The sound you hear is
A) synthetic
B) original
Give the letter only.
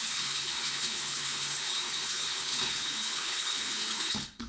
A